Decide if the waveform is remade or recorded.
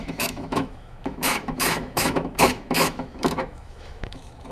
remade